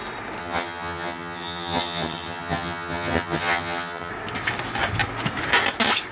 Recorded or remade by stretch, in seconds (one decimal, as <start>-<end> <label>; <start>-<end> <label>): 0.0-0.4 recorded; 0.4-4.1 remade; 4.1-6.1 recorded